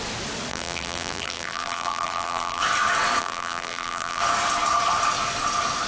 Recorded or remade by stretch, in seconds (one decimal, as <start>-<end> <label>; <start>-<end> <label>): 0.0-0.5 recorded; 0.5-2.6 remade; 2.6-3.2 recorded; 3.2-4.2 remade; 4.2-5.9 recorded